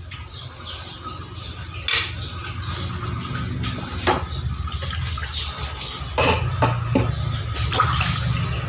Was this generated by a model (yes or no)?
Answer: no